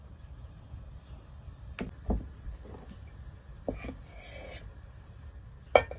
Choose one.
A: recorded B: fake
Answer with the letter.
A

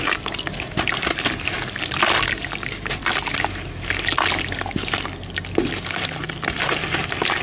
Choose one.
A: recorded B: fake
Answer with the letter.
A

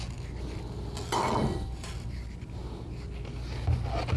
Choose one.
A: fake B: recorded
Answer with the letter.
B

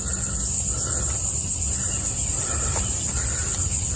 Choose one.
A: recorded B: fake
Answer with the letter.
A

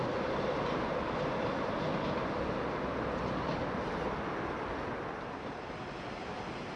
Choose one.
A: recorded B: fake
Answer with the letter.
A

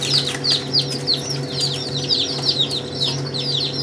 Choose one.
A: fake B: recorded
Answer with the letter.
B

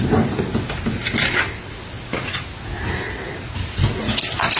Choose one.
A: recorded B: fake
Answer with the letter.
A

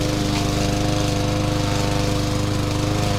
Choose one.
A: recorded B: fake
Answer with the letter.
A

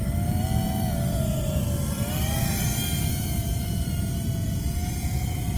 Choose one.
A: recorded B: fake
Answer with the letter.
A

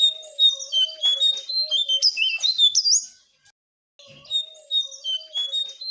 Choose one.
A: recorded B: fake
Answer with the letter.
A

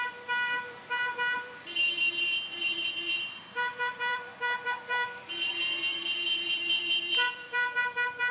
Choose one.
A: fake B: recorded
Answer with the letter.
A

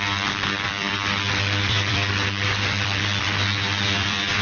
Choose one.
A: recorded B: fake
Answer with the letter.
B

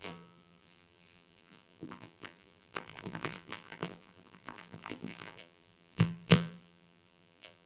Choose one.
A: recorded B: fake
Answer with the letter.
B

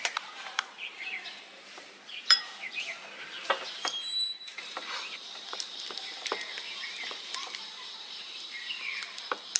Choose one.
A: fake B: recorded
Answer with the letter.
A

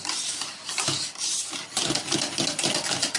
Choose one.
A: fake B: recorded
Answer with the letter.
B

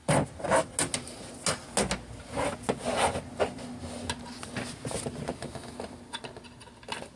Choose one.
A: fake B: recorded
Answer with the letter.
B